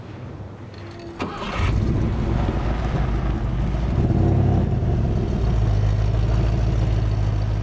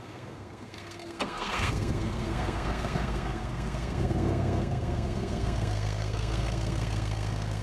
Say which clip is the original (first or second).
first